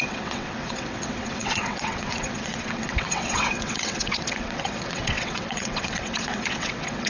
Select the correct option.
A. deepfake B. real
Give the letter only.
A